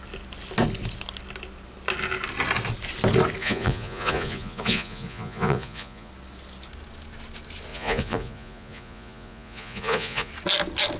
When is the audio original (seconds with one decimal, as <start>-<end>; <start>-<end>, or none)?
0.0-3.4; 6.1-7.7; 10.3-11.0